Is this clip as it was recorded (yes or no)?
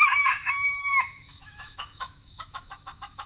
no